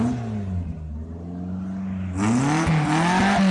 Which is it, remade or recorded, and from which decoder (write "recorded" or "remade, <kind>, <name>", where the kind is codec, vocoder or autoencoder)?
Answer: recorded